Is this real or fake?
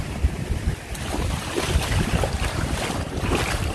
fake